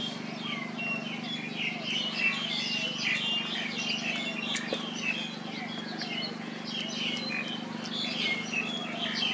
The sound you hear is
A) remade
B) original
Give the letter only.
B